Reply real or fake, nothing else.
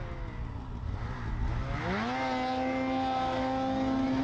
real